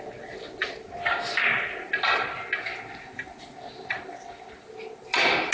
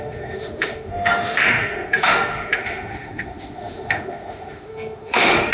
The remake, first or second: second